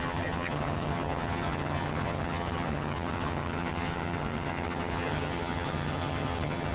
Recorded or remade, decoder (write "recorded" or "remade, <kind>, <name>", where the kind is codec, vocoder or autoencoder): remade, vocoder, HiFi-GAN